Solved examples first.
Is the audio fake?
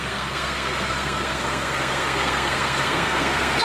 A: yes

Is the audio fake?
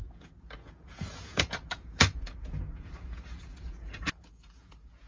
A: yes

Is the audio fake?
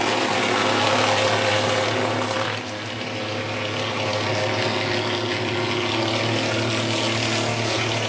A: no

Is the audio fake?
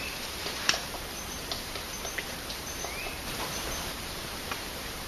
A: yes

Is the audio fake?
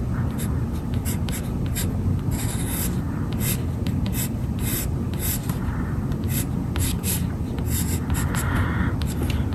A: yes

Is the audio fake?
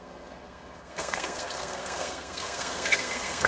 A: yes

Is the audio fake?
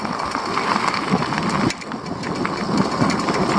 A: no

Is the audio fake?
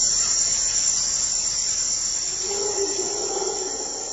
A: no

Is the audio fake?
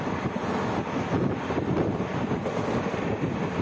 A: no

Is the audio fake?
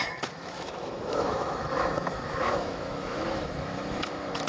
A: yes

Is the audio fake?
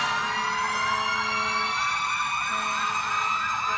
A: no